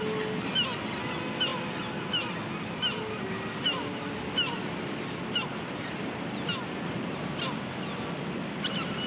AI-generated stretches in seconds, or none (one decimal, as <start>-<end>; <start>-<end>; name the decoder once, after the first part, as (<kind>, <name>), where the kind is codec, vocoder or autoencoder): none